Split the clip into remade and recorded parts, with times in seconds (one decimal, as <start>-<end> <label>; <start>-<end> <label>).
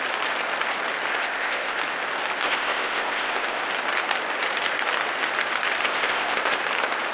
0.0-1.1 recorded; 1.1-1.8 remade; 1.8-2.4 recorded; 2.4-3.6 remade; 3.6-5.8 recorded; 5.8-6.6 remade; 6.6-7.1 recorded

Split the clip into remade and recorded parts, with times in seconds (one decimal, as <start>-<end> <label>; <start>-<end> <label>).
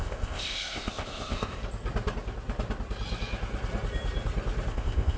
0.0-1.6 remade; 1.6-4.7 recorded; 4.7-5.2 remade